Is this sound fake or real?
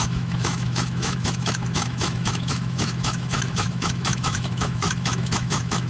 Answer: fake